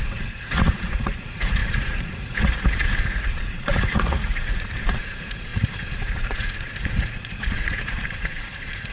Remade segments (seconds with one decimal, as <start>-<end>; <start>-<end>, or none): 0.0-8.9